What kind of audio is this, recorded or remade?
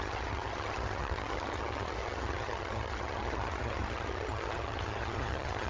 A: remade